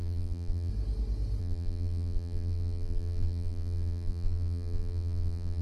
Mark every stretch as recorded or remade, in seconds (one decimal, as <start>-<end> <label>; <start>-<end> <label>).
0.0-0.7 remade; 0.7-1.4 recorded; 1.4-5.6 remade